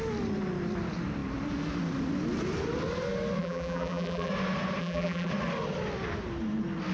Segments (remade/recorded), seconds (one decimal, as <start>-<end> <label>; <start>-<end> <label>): 0.0-3.4 recorded; 3.4-4.3 remade; 4.3-4.8 recorded; 4.8-5.3 remade; 5.3-6.9 recorded